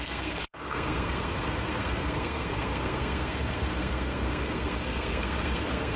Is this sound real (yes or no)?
no